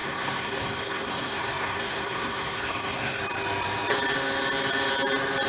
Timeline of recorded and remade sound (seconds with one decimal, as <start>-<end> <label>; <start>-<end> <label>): 0.0-3.2 remade; 3.2-5.5 recorded